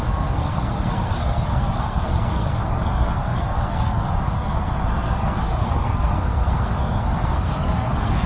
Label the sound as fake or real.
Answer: fake